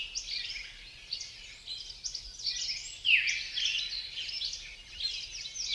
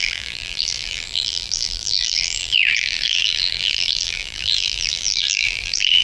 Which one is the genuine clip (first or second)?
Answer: first